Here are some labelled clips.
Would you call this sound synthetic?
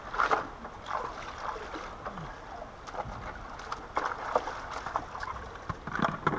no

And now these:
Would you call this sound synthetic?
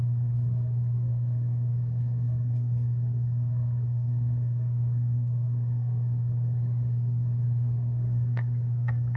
yes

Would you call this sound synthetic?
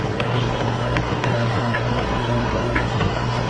yes